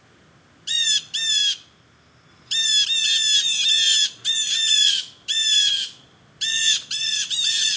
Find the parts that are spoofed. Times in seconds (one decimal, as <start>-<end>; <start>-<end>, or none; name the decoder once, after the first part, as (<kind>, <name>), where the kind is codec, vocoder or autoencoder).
0.0-1.4 (vocoder, BigVGAN v2); 2.3-2.7; 3.4-7.8